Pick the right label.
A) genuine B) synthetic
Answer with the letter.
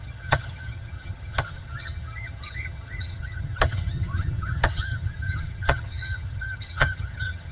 B